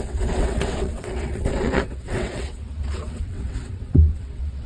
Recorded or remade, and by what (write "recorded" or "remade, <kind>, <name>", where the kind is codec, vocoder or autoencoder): remade, vocoder, WaveNeXt